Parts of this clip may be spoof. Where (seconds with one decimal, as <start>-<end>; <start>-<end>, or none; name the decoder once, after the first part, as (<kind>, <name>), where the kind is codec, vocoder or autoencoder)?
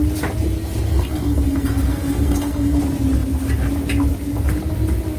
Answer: 0.9-2.8 (codec, SNAC)